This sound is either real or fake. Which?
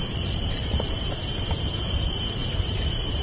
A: fake